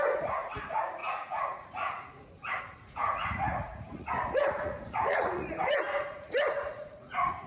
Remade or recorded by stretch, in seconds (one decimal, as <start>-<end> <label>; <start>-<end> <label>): 0.0-7.5 remade